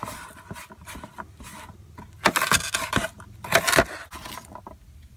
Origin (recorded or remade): recorded